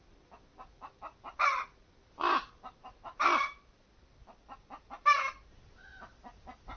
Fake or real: real